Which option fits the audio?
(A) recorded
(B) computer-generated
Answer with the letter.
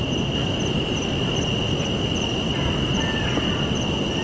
A